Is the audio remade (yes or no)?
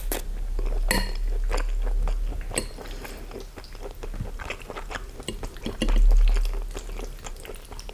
no